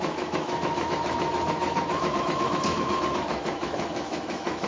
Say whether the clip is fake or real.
fake